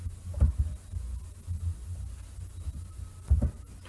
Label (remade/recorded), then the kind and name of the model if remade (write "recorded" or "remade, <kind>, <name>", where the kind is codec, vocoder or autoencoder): recorded